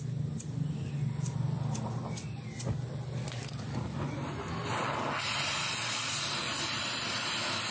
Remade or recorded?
recorded